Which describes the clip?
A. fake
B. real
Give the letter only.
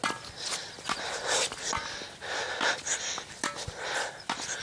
B